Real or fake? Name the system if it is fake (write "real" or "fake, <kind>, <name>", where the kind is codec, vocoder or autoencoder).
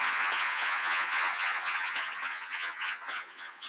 fake, vocoder, Vocos